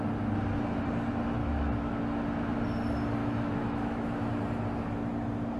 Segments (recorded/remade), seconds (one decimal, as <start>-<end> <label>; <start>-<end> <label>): 0.0-1.4 recorded; 1.4-2.0 remade; 2.0-3.2 recorded; 3.2-4.3 remade; 4.3-5.6 recorded